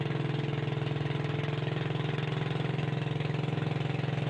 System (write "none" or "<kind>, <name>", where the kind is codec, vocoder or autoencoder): none